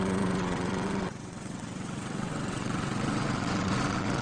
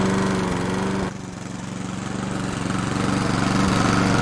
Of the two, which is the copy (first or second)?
first